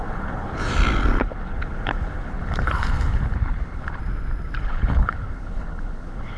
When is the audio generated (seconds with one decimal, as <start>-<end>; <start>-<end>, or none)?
0.0-0.6; 1.2-4.0; 4.6-6.4